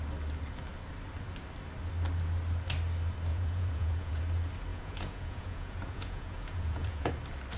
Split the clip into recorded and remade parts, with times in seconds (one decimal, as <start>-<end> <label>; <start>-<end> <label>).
0.0-3.3 recorded; 3.3-4.2 remade; 4.2-4.7 recorded; 4.7-7.1 remade; 7.1-7.6 recorded